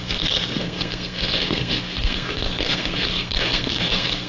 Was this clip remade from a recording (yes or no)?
yes